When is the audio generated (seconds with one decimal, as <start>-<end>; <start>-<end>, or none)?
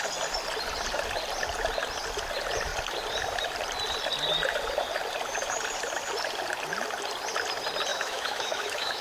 7.9-9.0